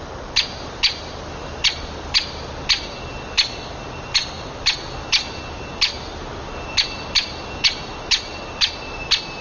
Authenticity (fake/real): real